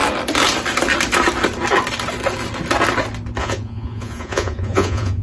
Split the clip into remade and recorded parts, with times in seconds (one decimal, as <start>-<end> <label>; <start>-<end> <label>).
0.0-3.4 recorded; 3.4-5.2 remade